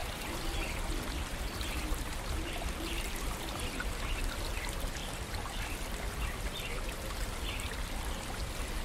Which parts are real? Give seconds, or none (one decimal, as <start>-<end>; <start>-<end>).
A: 0.7-1.8; 3.6-8.8